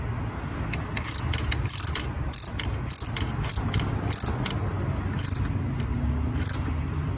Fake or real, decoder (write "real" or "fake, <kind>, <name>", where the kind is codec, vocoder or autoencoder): real